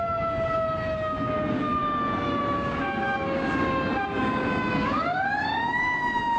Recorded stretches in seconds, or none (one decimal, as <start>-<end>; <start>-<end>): none